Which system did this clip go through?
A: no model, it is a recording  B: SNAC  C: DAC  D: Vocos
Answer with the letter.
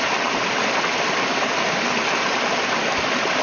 A